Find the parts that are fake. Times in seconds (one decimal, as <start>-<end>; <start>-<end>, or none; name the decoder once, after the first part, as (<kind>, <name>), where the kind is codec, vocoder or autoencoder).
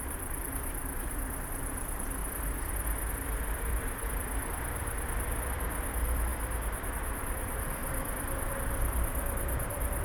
0.0-2.2 (vocoder, BigVGAN v2); 3.1-6.3; 6.9-10.0